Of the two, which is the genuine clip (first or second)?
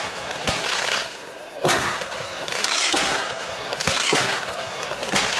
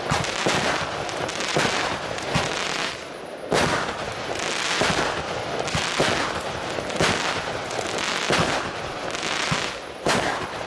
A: second